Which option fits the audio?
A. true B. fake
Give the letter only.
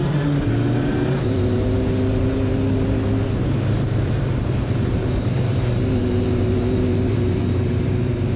B